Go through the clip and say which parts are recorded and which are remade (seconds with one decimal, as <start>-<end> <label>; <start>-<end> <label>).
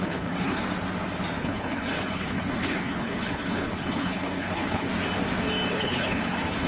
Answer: 0.0-0.6 remade; 0.6-1.4 recorded; 1.4-4.9 remade; 4.9-5.7 recorded; 5.7-6.7 remade